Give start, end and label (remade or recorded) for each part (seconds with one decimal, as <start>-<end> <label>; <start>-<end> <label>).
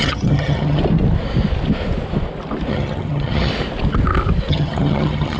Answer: 0.0-0.8 remade; 0.8-2.7 recorded; 2.7-3.5 remade; 3.5-4.5 recorded; 4.5-5.4 remade